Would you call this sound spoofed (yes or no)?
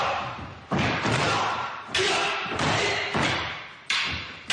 no